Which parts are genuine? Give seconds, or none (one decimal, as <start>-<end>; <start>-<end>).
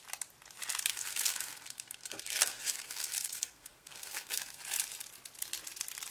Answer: 0.0-0.9; 4.6-6.1